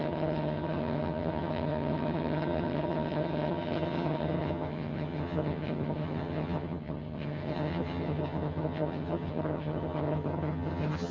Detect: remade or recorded remade